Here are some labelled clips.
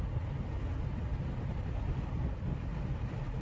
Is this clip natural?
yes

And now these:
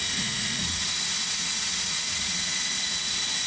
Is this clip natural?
no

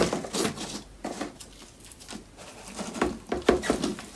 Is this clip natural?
yes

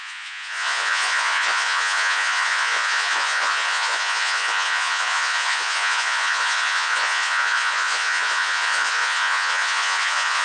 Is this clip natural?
no